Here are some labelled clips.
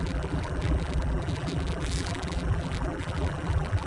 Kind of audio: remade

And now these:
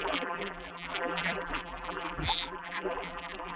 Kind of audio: remade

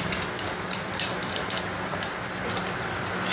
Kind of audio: recorded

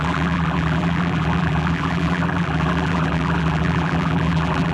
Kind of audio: remade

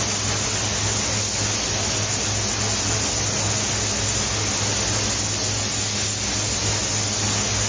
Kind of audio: recorded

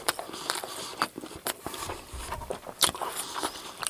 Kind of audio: remade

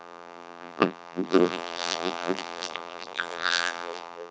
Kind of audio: remade